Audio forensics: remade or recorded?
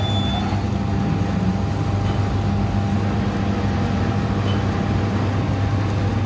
recorded